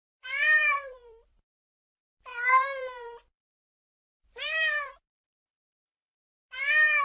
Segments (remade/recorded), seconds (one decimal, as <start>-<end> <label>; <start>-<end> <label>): 0.0-1.5 remade; 1.5-2.3 recorded; 2.3-6.5 remade; 6.5-7.0 recorded